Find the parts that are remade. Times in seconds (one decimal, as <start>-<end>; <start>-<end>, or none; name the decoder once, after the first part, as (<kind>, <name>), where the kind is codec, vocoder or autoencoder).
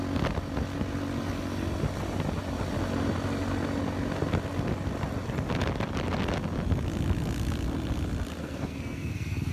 8.4-9.5 (codec, SNAC)